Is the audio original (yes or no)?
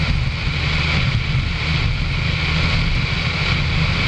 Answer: yes